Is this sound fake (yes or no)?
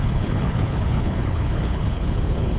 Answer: yes